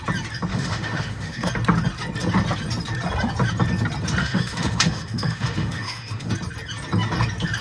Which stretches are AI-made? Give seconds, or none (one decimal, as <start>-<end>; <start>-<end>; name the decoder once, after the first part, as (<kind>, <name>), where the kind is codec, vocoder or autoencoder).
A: 0.5-1.5 (autoencoder, DAC-VAE); 4.2-6.3